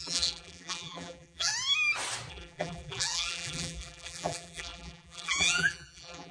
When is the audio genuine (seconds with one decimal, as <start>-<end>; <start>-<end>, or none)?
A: 1.5-2.3